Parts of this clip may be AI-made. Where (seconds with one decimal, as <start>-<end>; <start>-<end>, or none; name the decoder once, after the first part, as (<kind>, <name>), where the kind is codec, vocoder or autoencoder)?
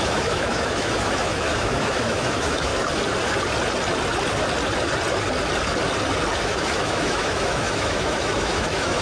0.0-2.7 (autoencoder, DAC-VAE); 6.4-9.0